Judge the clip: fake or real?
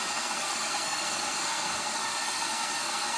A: fake